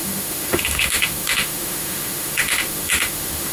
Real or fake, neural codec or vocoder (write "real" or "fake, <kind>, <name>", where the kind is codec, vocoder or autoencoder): fake, autoencoder, DAC-VAE